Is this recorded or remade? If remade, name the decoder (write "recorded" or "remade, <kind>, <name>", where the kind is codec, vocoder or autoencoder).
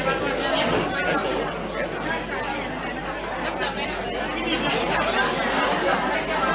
recorded